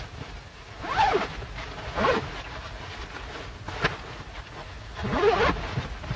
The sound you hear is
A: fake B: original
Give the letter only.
B